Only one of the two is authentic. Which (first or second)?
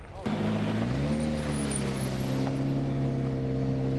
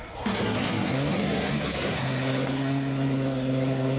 first